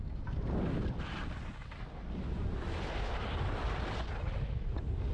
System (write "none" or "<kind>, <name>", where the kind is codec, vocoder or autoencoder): none